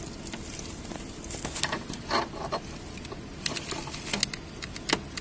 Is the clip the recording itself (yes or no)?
yes